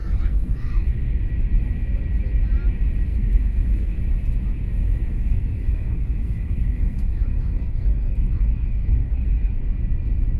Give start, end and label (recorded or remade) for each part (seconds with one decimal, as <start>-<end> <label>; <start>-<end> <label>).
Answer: 0.0-1.2 remade; 1.2-3.1 recorded; 3.1-4.0 remade; 4.0-4.8 recorded; 4.8-9.6 remade; 9.6-10.4 recorded

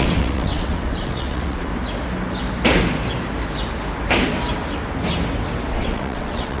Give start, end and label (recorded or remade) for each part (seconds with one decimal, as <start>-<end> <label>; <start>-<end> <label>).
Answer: 0.0-1.7 remade; 1.7-5.7 recorded; 5.7-6.6 remade

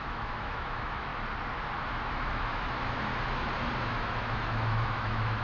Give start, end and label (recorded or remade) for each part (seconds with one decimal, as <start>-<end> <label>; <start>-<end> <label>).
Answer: 0.0-1.1 remade; 1.1-1.8 recorded; 1.8-3.1 remade; 3.1-3.9 recorded; 3.9-5.4 remade

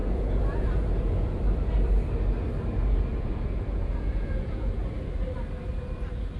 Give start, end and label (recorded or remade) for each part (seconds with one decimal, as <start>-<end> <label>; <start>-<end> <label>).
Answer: 0.0-1.4 remade; 1.4-3.1 recorded; 3.1-4.8 remade; 4.8-6.4 recorded

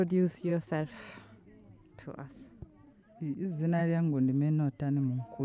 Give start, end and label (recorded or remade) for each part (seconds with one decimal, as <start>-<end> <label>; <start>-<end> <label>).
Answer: 0.0-3.8 recorded; 3.8-5.4 remade

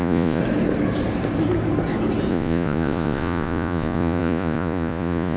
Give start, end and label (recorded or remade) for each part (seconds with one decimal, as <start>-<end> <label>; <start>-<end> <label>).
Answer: 0.0-0.4 remade; 0.4-2.3 recorded; 2.3-5.4 remade

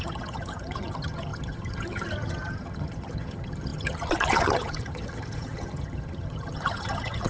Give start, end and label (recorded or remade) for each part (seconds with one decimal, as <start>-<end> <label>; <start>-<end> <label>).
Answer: 0.0-7.3 remade

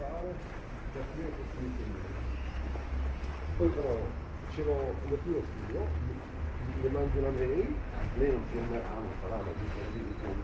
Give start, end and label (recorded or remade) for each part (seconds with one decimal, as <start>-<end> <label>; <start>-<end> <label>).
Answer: 0.0-3.3 recorded; 3.3-3.8 remade; 3.8-10.4 recorded